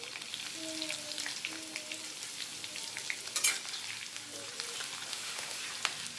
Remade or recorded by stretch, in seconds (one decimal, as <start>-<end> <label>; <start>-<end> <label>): 0.0-5.1 recorded; 5.1-5.6 remade; 5.6-6.2 recorded